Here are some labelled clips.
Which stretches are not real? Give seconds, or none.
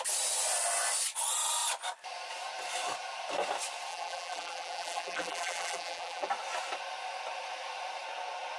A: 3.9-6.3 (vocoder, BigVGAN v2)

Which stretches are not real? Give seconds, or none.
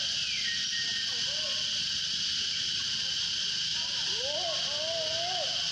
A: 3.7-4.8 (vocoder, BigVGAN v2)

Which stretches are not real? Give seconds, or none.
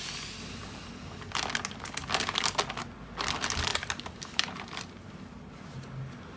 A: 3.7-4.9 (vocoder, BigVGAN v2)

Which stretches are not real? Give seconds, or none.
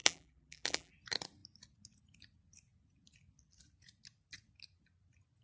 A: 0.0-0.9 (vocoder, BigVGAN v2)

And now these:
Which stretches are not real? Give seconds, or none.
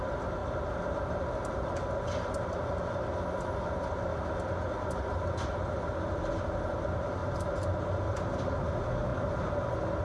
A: 0.0-7.2 (vocoder, BigVGAN v2); 8.3-9.1